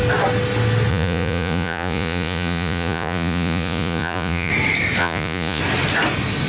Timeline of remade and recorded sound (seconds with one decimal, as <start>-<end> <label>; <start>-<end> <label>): 0.0-0.9 recorded; 0.9-4.5 remade; 4.5-5.0 recorded; 5.0-5.6 remade; 5.6-6.5 recorded